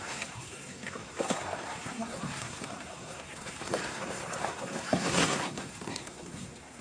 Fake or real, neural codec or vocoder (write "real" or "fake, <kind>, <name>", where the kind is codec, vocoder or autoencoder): fake, codec, SNAC